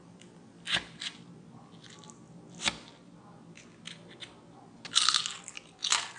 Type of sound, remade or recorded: recorded